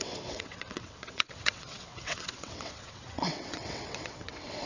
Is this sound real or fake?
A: fake